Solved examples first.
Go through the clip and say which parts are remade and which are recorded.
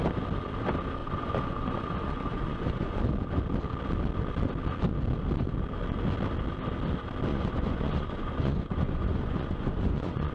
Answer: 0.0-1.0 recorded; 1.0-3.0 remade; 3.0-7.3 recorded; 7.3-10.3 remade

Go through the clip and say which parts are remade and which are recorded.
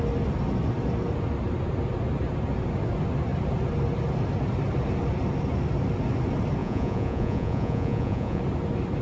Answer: 0.0-6.6 recorded; 6.6-8.4 remade; 8.4-9.0 recorded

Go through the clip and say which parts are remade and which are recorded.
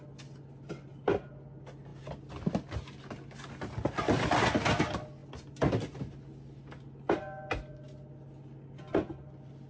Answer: 0.0-9.7 recorded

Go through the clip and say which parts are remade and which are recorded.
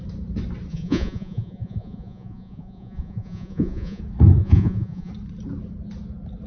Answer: 0.0-0.7 recorded; 0.7-4.0 remade; 4.0-4.4 recorded; 4.4-5.1 remade; 5.1-6.5 recorded